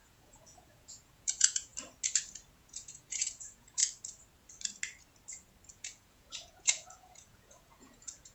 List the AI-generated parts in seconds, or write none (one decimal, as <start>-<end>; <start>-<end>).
0.0-1.7; 2.6-3.8; 5.7-8.3